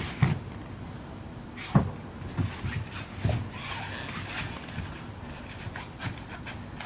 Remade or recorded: recorded